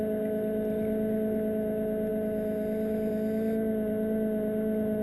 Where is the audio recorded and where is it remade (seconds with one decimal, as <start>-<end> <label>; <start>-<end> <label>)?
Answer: 0.0-5.0 recorded